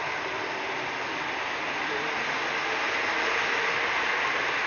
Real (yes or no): yes